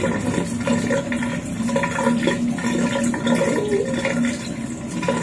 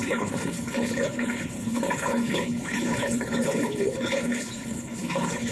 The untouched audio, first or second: first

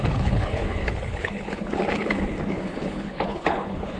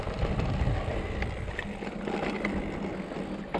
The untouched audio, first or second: second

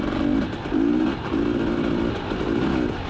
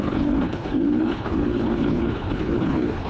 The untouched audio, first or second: first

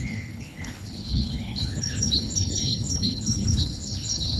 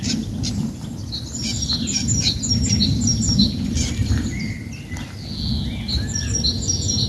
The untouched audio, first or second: second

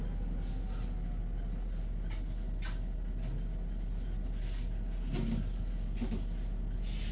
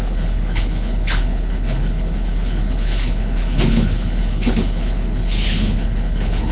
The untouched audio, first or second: first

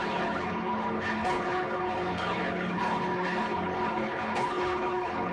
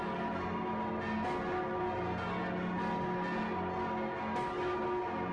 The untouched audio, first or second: second